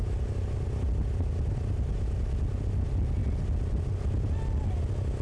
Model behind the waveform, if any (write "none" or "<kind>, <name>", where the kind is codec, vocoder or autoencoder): none